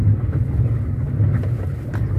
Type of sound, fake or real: real